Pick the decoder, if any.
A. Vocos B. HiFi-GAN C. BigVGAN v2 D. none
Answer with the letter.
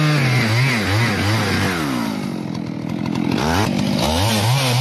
D